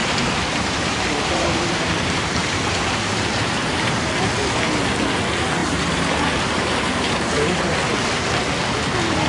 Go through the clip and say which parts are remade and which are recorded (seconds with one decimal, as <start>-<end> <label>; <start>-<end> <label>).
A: 0.0-4.1 remade; 4.1-5.6 recorded; 5.6-7.9 remade; 7.9-9.3 recorded